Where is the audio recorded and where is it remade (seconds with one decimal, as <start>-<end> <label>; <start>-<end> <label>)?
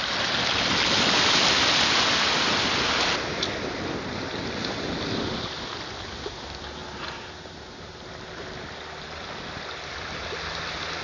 0.0-11.0 recorded